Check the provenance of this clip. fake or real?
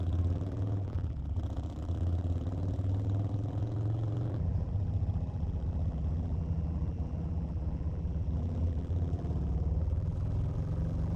fake